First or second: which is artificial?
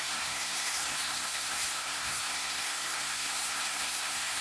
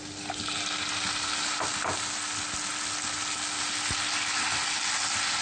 first